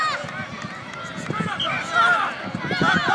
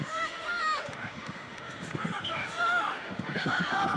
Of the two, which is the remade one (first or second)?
second